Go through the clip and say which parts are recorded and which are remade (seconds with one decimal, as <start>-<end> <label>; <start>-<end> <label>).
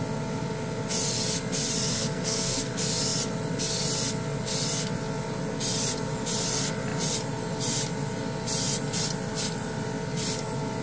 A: 0.0-1.9 recorded; 1.9-2.7 remade; 2.7-10.8 recorded